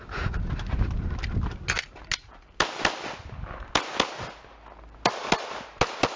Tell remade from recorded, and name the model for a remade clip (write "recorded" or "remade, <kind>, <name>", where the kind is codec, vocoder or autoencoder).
recorded